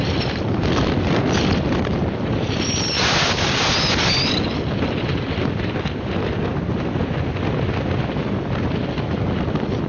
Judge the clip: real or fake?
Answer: real